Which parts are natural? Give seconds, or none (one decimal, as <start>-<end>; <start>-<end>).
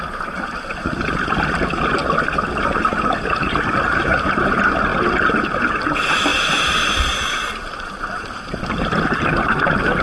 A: 2.0-2.6